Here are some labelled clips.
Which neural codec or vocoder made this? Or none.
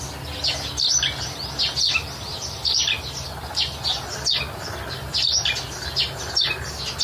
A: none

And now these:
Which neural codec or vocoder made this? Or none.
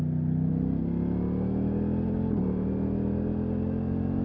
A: none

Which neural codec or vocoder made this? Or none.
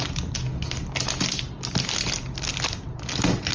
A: none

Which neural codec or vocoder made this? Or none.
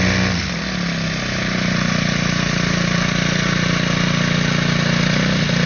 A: none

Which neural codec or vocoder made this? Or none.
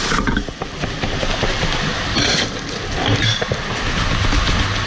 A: none